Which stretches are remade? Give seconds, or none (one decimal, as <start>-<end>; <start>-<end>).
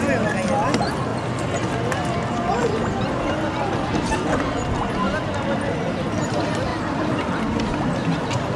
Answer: 6.7-8.2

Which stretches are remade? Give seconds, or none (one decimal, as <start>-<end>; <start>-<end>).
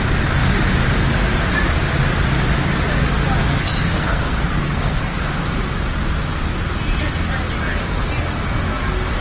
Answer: 3.5-5.3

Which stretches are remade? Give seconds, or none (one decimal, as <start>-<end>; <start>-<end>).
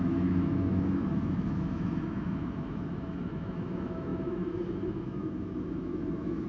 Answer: 0.0-6.5